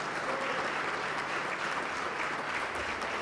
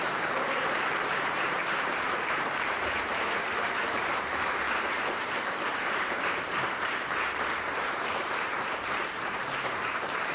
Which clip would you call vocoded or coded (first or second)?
second